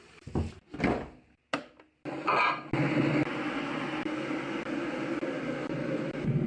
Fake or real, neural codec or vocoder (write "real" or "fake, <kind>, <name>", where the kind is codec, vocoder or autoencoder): real